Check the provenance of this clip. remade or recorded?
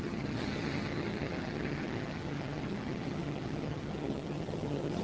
remade